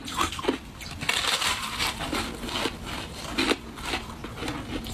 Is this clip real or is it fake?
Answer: real